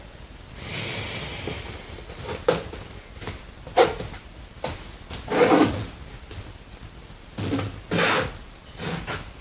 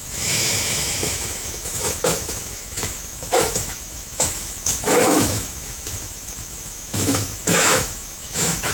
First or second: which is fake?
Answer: second